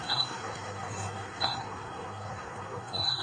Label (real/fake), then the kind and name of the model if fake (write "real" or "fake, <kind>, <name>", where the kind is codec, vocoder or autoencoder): fake, codec, SNAC